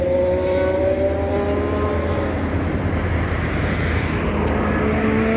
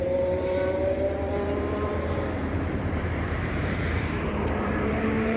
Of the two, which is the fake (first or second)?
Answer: second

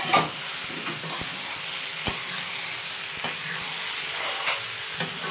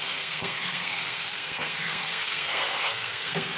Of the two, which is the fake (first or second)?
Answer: second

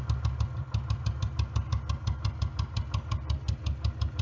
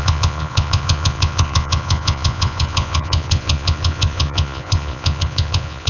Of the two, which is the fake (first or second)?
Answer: second